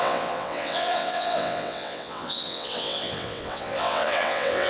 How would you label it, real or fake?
fake